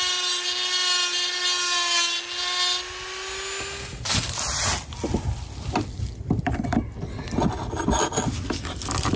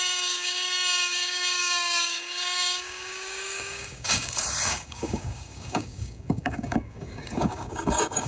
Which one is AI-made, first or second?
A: second